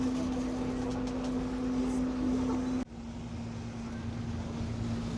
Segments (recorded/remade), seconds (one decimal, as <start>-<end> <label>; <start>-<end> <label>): 0.0-5.2 recorded